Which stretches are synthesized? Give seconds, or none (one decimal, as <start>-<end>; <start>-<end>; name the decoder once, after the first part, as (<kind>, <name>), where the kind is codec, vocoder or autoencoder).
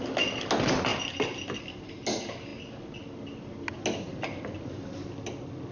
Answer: none